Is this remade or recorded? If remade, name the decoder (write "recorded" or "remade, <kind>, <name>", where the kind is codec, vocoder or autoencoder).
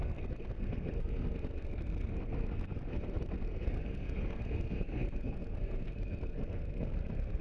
remade, codec, SNAC